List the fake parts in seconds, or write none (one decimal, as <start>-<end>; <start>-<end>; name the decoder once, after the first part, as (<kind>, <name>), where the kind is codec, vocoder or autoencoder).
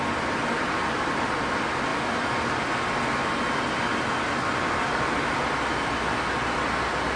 none